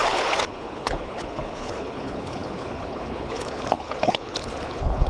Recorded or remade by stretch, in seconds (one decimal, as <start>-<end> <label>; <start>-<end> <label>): 0.0-5.1 remade